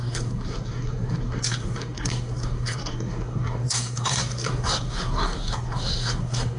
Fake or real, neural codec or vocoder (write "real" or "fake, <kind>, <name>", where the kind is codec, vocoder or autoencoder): fake, codec, SNAC